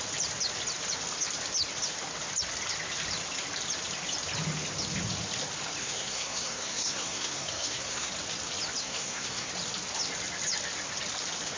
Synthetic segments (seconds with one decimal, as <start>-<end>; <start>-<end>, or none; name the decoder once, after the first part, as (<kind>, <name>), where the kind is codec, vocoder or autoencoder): 5.8-8.1 (codec, SNAC); 8.8-9.5

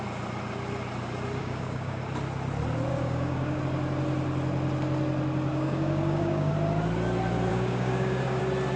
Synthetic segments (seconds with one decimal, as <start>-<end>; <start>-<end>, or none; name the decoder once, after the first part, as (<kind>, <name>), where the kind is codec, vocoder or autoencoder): 1.4-2.0 (codec, DAC); 2.9-3.6; 5.5-6.5; 7.5-8.4

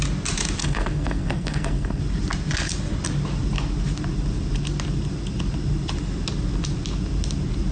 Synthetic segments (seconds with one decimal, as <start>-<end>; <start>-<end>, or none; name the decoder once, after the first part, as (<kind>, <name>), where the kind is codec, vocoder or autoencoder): 0.6-2.0 (codec, SNAC)

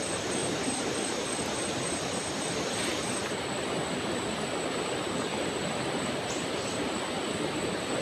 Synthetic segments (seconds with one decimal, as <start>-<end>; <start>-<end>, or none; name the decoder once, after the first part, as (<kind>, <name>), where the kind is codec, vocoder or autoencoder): 0.4-2.5 (vocoder, BigVGAN v2)

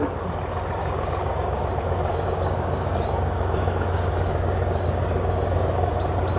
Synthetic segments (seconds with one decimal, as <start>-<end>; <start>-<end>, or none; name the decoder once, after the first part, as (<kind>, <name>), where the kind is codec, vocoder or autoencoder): 0.8-1.6 (codec, DAC); 2.1-5.9

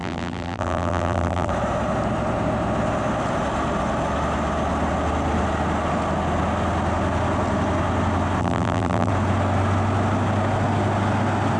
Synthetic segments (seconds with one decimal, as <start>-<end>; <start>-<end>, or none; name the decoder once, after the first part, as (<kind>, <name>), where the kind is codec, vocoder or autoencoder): 0.0-1.5 (vocoder, BigVGAN v2); 8.4-9.1

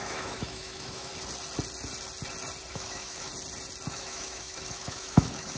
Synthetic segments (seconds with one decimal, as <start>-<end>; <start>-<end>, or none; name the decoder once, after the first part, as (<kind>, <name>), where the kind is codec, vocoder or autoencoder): 0.0-1.1 (autoencoder, DAC-VAE); 2.7-3.3; 3.9-5.6

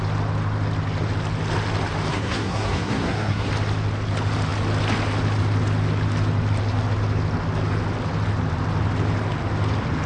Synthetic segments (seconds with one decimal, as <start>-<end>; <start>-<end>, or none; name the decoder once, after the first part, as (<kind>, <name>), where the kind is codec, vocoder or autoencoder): 2.1-3.5 (codec, SNAC)